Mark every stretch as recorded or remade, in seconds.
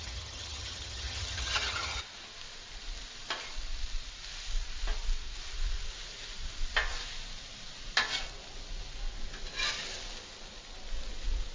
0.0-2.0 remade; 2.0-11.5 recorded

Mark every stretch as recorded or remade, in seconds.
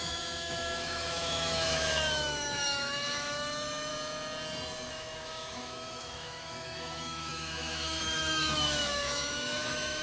0.0-3.9 remade; 3.9-4.9 recorded; 4.9-10.0 remade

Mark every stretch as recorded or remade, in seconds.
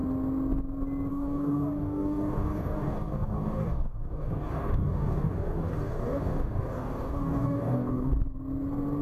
0.0-1.1 recorded; 1.1-8.1 remade; 8.1-9.0 recorded